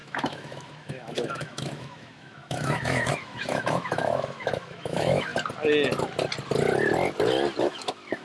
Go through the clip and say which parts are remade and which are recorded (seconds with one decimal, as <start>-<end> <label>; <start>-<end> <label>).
0.0-5.3 remade; 5.3-7.6 recorded; 7.6-8.2 remade

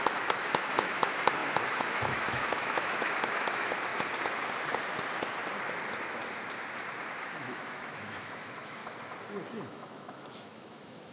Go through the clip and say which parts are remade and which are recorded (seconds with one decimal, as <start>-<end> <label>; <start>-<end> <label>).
0.0-3.9 remade; 3.9-7.1 recorded; 7.1-8.8 remade; 8.8-9.7 recorded; 9.7-11.1 remade

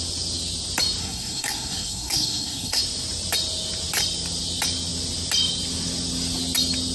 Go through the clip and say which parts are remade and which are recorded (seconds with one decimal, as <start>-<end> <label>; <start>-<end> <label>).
0.0-1.0 recorded; 1.0-2.8 remade; 2.8-6.9 recorded

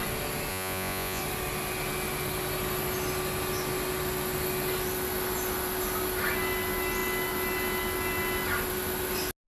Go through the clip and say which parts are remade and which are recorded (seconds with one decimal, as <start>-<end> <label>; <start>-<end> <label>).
0.0-0.5 recorded; 0.5-1.2 remade; 1.2-9.5 recorded